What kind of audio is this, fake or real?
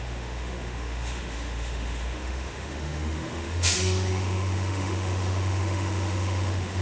fake